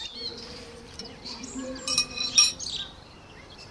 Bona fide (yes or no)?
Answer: no